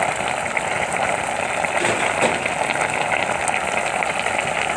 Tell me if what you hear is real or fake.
real